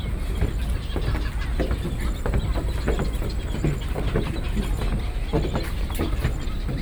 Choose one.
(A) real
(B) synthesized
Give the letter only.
A